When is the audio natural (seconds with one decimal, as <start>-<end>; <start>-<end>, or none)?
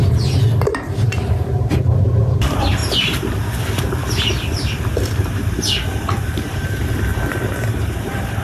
0.0-0.6; 2.8-6.2